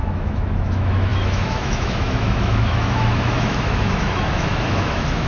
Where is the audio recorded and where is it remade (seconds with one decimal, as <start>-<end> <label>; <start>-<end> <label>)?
0.0-5.3 remade